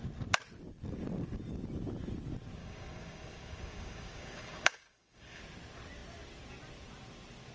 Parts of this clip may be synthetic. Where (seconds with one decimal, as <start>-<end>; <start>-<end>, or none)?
2.6-5.4